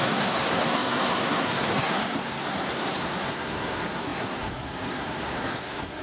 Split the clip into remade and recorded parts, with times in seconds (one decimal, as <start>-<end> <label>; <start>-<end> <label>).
0.0-6.0 remade